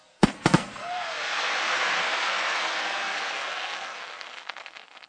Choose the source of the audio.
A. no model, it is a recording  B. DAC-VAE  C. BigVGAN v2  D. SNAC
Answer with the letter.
D